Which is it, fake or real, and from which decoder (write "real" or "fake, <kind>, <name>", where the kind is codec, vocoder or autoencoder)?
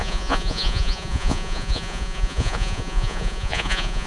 fake, vocoder, Vocos